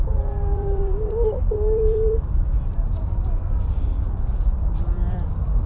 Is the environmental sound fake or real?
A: fake